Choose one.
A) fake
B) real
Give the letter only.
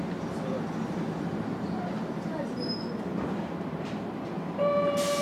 B